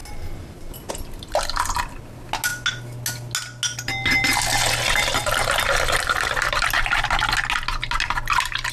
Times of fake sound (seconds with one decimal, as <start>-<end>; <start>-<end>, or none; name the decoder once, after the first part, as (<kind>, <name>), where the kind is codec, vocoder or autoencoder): 5.2-6.8 (vocoder, BigVGAN v2)

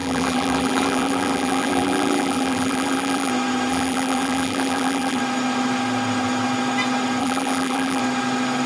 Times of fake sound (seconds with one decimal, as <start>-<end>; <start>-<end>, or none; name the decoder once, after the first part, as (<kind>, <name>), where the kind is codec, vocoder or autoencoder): 0.0-3.3 (vocoder, BigVGAN v2); 3.7-5.2; 7.2-8.0

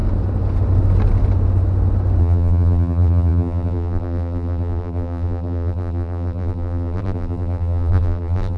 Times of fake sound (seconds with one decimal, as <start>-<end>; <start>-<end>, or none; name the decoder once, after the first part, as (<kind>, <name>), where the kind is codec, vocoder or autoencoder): 2.2-8.6 (vocoder, BigVGAN v2)

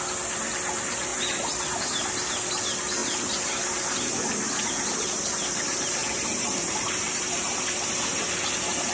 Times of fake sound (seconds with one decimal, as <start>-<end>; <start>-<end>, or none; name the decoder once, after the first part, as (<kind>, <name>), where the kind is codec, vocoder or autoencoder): 1.1-1.7 (vocoder, BigVGAN v2); 6.0-7.6